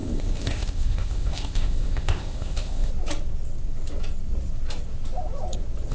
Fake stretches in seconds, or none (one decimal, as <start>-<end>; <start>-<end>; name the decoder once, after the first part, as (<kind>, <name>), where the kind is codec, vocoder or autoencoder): 0.0-2.9 (codec, ZipCodec)